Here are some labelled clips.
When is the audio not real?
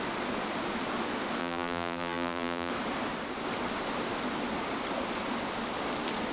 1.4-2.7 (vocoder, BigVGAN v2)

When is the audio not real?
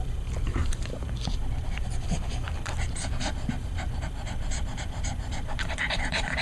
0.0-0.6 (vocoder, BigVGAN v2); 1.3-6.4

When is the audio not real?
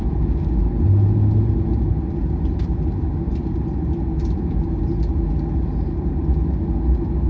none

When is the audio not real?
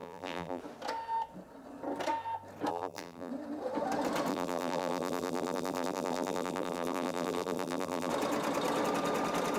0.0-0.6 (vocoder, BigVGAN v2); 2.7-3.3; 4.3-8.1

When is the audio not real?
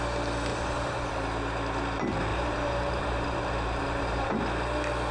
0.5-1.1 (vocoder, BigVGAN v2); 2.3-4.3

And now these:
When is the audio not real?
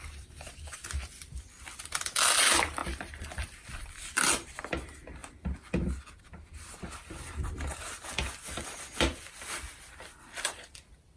0.0-11.2 (vocoder, BigVGAN v2)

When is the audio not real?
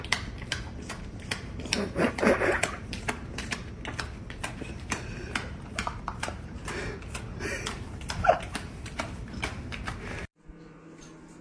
0.0-3.6 (vocoder, BigVGAN v2); 4.2-6.6; 7.4-11.4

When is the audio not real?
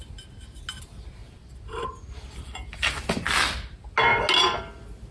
1.2-3.2 (vocoder, BigVGAN v2)